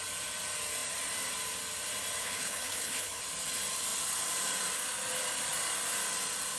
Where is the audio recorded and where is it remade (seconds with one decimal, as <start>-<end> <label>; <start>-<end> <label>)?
0.0-2.2 recorded; 2.2-3.2 remade; 3.2-6.6 recorded